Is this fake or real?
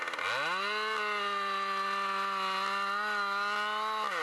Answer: real